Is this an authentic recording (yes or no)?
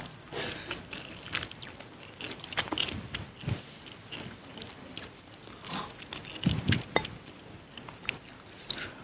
yes